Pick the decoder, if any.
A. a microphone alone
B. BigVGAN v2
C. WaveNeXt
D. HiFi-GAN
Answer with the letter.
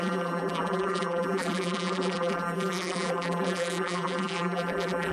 B